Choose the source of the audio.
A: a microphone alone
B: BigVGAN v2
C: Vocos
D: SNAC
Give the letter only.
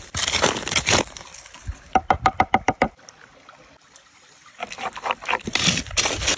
B